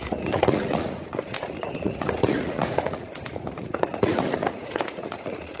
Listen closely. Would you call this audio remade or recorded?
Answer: remade